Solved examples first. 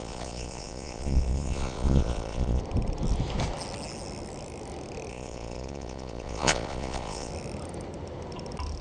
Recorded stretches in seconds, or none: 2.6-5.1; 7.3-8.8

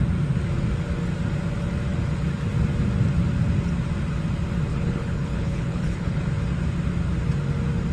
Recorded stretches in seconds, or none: 0.0-4.7; 6.2-7.9

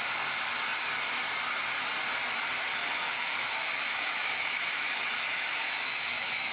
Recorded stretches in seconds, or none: 0.0-2.7

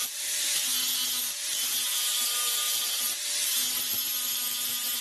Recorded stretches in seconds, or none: 0.0-5.0

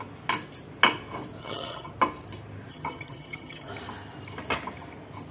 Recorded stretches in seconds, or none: 0.0-1.4; 1.9-2.7; 3.7-5.3

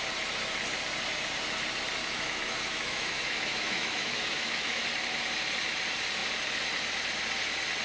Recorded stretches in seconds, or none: 0.0-2.0; 4.8-7.8